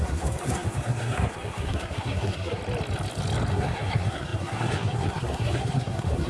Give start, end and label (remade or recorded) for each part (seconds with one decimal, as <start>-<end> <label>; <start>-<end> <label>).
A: 0.0-2.6 remade; 2.6-3.5 recorded; 3.5-6.3 remade